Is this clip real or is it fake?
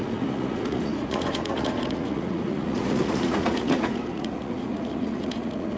fake